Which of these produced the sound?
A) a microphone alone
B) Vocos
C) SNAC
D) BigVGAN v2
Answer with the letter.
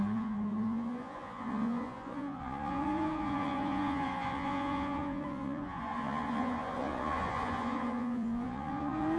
B